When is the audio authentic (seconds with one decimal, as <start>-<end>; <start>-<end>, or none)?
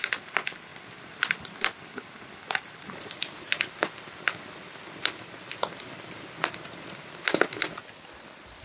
0.0-8.6